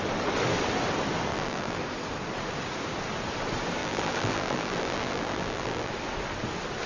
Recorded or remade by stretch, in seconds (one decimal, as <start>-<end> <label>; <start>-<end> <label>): 0.0-1.3 recorded; 1.3-1.8 remade; 1.8-3.8 recorded; 3.8-5.9 remade; 5.9-6.9 recorded